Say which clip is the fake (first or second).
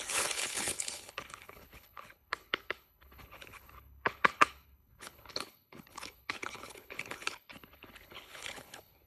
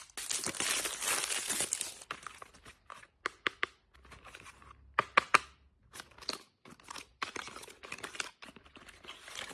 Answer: first